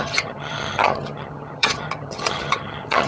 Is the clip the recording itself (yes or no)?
no